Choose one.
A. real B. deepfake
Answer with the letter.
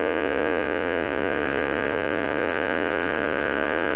B